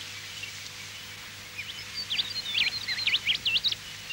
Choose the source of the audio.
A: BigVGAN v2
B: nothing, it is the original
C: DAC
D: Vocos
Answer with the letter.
B